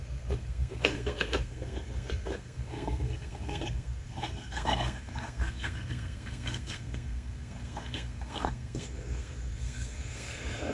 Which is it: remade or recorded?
remade